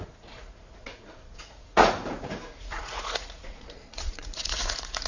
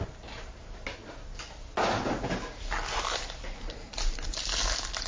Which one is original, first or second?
second